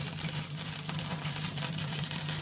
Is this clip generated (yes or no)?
yes